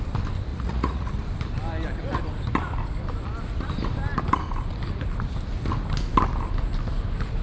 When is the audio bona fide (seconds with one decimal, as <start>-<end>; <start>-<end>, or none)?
0.0-0.5; 1.1-7.4